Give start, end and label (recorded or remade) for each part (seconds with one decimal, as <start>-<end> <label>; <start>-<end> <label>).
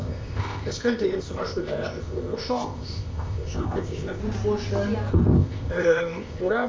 0.0-4.2 remade; 4.2-5.1 recorded; 5.1-6.7 remade